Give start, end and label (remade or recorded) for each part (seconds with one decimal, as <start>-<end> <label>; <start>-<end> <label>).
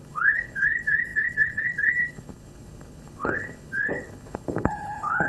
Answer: 0.0-5.3 remade